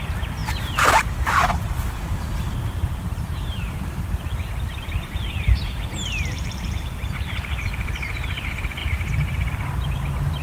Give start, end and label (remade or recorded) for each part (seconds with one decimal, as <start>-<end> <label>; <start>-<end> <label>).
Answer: 0.0-10.4 remade